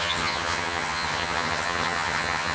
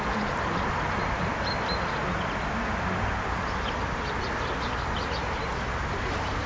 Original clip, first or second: second